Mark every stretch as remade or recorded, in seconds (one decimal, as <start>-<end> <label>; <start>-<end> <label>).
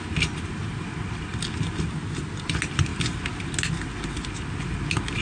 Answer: 0.0-5.2 recorded